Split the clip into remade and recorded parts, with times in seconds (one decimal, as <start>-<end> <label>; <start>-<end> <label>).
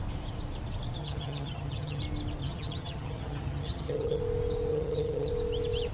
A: 0.0-1.0 recorded; 1.0-2.0 remade; 2.0-2.4 recorded; 2.4-4.2 remade; 4.2-4.7 recorded; 4.7-5.3 remade; 5.3-5.9 recorded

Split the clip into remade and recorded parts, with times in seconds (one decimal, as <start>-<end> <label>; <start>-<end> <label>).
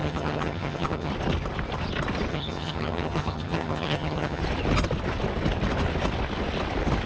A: 0.0-1.1 remade; 1.1-2.3 recorded; 2.3-4.4 remade; 4.4-7.1 recorded